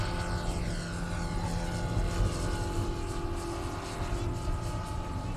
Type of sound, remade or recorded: recorded